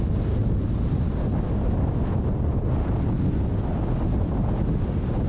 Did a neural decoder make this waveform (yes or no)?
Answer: no